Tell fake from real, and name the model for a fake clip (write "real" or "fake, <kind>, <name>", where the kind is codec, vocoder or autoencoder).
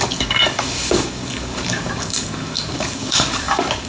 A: fake, codec, DAC